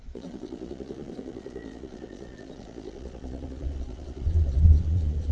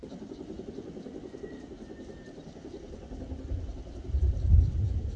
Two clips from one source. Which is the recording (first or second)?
second